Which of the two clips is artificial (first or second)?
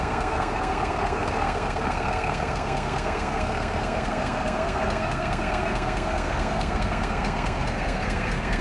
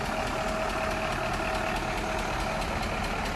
first